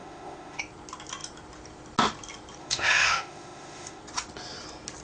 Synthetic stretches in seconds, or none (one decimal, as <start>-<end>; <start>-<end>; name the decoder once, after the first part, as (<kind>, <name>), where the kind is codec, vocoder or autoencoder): 0.0-0.6 (autoencoder, DAC-VAE); 2.6-4.0